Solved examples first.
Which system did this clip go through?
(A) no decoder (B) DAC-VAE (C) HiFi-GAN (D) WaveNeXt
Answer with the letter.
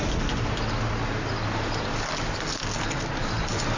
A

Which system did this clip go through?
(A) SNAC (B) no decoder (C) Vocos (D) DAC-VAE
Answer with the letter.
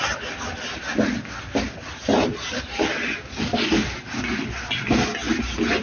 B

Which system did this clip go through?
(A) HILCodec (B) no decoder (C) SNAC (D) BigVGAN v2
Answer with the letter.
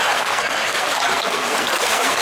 C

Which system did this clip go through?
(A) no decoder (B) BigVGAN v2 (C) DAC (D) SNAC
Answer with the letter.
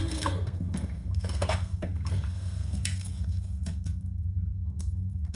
D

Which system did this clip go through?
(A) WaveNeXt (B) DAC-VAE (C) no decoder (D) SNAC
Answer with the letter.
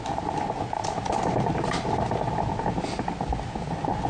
C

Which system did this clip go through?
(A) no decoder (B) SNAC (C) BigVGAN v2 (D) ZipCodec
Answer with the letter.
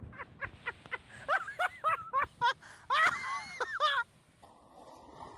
A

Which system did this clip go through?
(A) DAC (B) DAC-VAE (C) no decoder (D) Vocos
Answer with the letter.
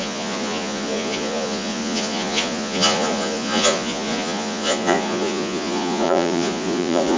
D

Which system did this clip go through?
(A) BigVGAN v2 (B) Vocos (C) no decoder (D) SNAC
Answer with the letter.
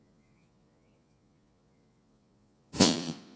B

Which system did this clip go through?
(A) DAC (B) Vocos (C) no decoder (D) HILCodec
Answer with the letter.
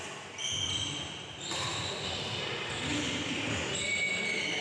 C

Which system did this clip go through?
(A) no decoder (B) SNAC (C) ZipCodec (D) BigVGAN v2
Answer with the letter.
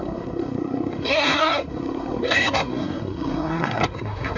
B